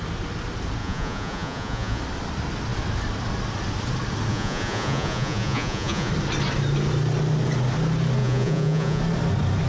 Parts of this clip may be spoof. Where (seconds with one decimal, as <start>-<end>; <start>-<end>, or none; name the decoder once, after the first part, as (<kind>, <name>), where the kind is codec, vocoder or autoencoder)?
0.8-2.0 (vocoder, Vocos); 4.3-6.1; 8.2-9.0